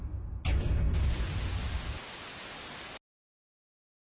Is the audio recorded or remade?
recorded